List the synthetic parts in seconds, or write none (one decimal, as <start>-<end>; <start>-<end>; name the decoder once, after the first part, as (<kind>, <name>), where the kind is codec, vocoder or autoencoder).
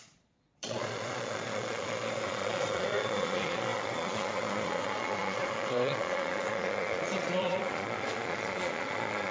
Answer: 0.0-9.3 (vocoder, Vocos)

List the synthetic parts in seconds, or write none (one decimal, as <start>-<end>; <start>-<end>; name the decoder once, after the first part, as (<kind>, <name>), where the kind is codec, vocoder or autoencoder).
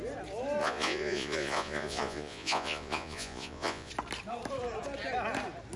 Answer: 0.6-3.9 (vocoder, Vocos)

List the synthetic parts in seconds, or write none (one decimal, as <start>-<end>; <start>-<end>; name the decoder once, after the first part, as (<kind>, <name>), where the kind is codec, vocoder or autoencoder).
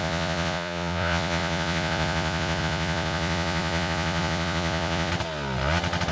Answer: 0.0-5.1 (vocoder, Vocos)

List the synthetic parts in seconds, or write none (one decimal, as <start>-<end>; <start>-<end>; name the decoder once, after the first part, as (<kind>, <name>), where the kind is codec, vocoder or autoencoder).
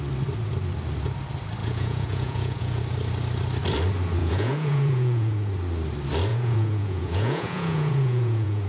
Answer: 1.6-2.8 (vocoder, Vocos); 4.2-5.5; 6.3-8.7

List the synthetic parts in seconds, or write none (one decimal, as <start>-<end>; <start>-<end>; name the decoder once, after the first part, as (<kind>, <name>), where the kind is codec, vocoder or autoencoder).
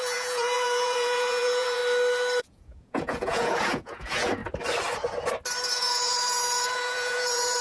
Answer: 0.0-1.8 (vocoder, Vocos); 2.4-4.4; 5.7-7.6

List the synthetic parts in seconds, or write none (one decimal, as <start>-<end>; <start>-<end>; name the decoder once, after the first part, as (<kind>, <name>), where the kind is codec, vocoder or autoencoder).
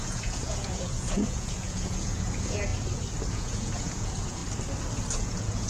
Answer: 0.0-2.7 (vocoder, Vocos); 3.3-4.4; 5.2-5.7